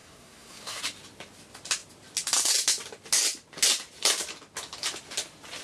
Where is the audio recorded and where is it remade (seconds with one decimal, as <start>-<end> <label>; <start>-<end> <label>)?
0.0-0.8 remade; 0.8-5.6 recorded